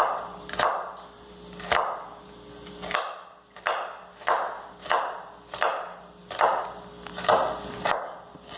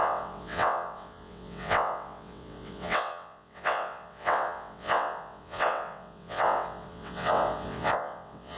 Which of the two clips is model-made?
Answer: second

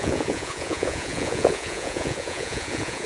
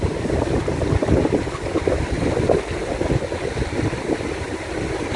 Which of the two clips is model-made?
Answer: first